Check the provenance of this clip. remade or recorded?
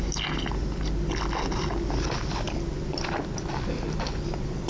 recorded